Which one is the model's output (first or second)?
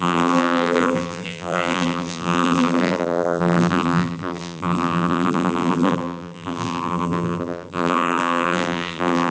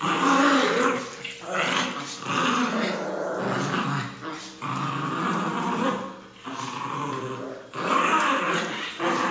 first